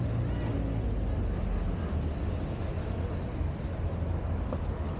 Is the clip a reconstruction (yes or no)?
no